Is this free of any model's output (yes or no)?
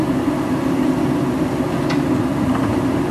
yes